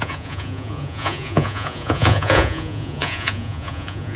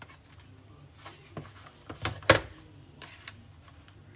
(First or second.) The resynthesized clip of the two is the first